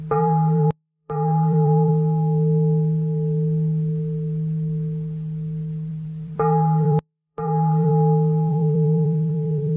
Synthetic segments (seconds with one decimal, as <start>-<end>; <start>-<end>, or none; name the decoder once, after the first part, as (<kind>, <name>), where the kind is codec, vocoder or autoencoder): 0.0-1.9 (vocoder, BigVGAN v2); 5.9-7.9; 8.5-9.8